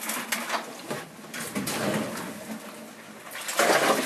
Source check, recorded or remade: recorded